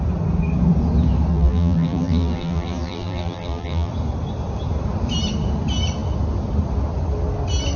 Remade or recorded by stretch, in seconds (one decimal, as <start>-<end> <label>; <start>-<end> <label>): 0.0-1.3 recorded; 1.3-3.9 remade; 3.9-7.8 recorded